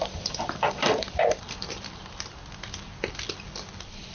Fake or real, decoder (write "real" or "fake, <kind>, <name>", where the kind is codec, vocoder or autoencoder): fake, vocoder, BigVGAN v2